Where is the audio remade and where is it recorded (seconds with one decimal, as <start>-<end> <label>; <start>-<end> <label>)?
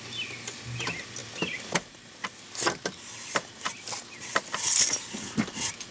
0.0-5.9 recorded